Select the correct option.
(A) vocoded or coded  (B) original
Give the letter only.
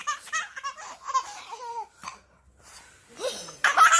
B